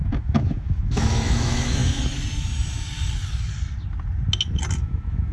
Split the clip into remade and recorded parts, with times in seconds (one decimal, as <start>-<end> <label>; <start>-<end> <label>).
0.0-1.8 remade; 1.8-4.8 recorded; 4.8-5.3 remade